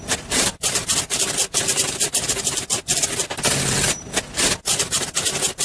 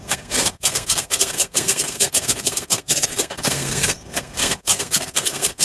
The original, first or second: first